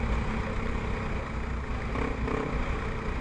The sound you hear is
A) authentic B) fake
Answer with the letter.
A